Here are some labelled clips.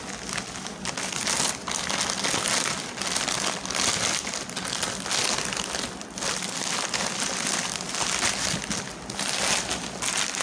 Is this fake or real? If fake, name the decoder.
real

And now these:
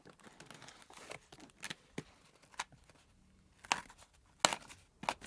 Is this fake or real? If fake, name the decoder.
real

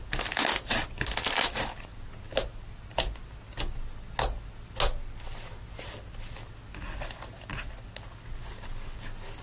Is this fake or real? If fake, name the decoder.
real